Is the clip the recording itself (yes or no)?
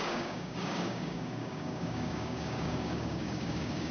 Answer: no